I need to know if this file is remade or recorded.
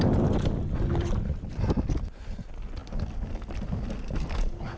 recorded